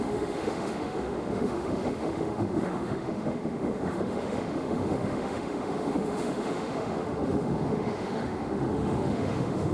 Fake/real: fake